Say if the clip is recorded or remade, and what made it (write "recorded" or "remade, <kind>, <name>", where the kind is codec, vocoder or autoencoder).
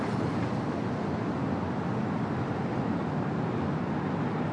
recorded